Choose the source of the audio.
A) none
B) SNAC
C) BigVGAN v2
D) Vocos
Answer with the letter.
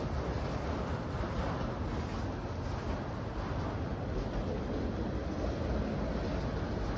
A